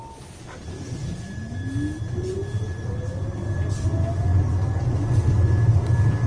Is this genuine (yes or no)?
yes